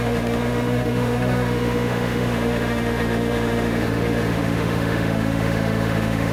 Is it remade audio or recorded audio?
remade